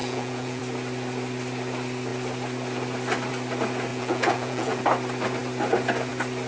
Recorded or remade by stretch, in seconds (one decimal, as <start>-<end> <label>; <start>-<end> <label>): 0.0-0.6 remade; 0.6-3.9 recorded; 3.9-4.8 remade; 4.8-6.5 recorded